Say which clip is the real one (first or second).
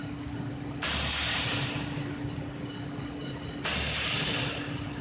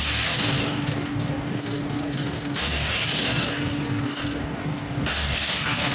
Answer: first